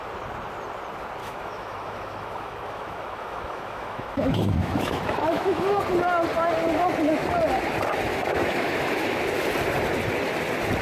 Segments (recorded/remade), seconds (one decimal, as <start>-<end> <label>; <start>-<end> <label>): 0.0-1.2 recorded; 1.2-5.8 remade; 5.8-8.1 recorded; 8.1-9.2 remade; 9.2-10.8 recorded